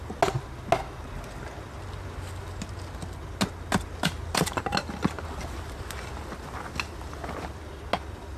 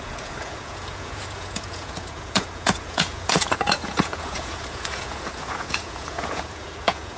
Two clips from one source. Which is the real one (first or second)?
first